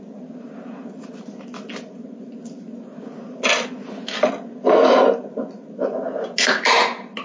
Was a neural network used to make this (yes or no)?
no